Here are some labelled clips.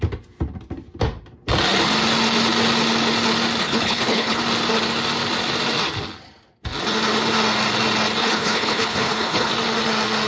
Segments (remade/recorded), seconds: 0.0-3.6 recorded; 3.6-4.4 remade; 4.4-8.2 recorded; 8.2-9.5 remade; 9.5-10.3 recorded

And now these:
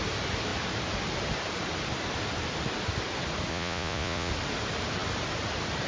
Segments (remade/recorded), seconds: 0.0-3.5 recorded; 3.5-4.3 remade; 4.3-5.9 recorded